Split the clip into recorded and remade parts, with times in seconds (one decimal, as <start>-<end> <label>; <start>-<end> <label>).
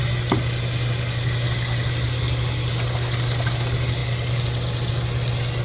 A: 0.0-5.6 recorded